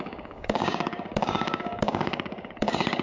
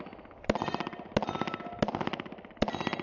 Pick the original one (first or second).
second